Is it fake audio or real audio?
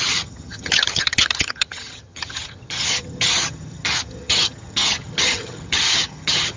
fake